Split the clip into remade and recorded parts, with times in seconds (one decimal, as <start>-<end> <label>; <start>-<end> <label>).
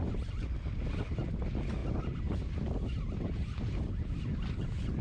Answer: 0.0-5.0 recorded